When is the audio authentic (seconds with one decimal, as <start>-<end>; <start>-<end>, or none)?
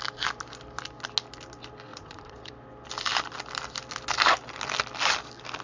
0.0-1.9; 2.5-5.6